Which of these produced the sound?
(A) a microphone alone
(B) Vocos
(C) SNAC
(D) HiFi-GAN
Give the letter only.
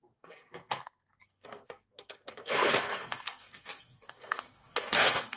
C